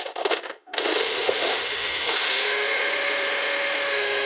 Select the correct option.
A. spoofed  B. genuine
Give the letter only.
A